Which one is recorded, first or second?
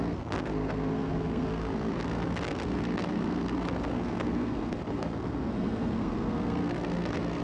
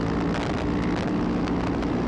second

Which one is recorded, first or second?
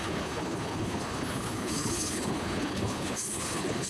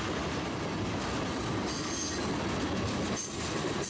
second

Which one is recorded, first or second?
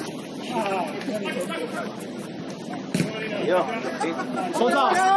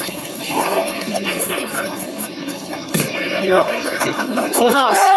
first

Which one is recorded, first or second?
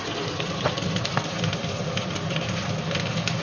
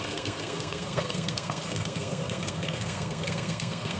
first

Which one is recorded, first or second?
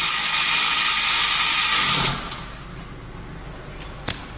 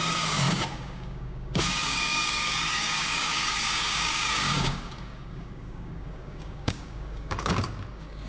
first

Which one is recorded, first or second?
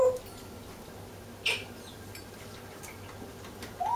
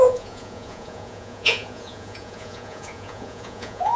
first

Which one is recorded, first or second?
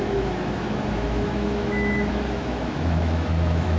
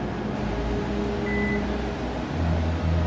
second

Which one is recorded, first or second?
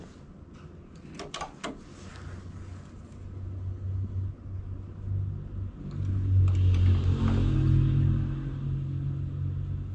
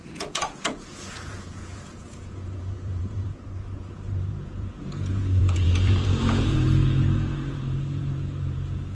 first